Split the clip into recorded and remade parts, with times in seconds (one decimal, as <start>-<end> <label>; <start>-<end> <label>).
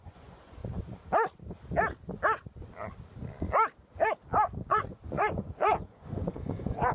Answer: 0.0-0.6 remade; 0.6-4.7 recorded; 4.7-6.9 remade